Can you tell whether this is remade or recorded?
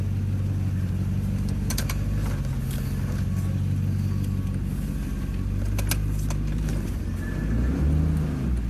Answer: recorded